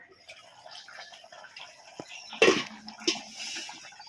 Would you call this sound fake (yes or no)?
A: no